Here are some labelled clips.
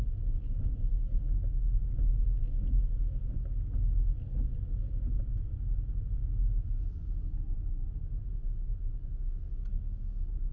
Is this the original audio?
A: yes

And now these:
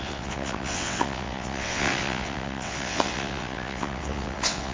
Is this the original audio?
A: no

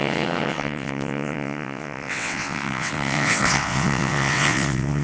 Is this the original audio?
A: no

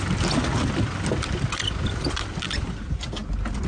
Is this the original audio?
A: yes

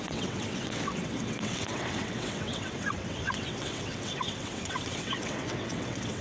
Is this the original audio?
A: no